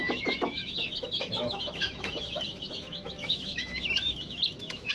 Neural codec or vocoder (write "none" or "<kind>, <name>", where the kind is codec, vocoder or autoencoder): autoencoder, DAC-VAE